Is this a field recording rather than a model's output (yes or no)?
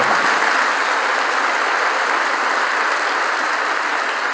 yes